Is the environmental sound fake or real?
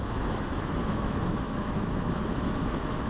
fake